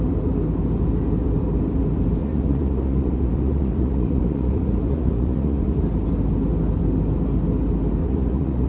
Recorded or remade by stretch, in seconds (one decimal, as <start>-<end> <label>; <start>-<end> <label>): 0.0-2.2 recorded; 2.2-5.8 remade; 5.8-8.0 recorded; 8.0-8.7 remade